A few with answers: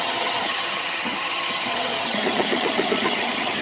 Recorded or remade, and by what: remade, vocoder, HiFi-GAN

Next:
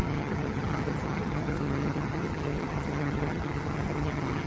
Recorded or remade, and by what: remade, vocoder, HiFi-GAN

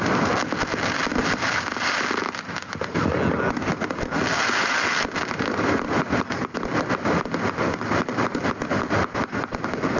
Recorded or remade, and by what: recorded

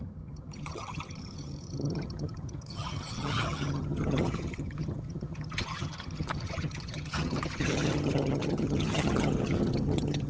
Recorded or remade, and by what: remade, vocoder, HiFi-GAN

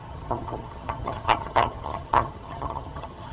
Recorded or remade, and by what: remade, vocoder, HiFi-GAN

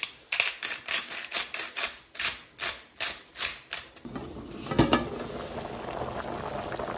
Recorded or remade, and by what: recorded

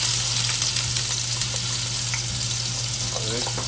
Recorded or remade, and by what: recorded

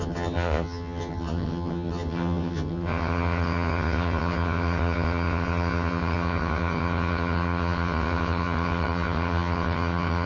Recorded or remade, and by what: remade, vocoder, HiFi-GAN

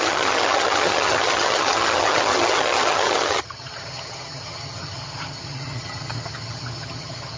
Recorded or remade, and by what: remade, vocoder, HiFi-GAN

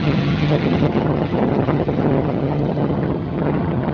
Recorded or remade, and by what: remade, vocoder, HiFi-GAN